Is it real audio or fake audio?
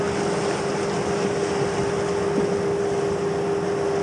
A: real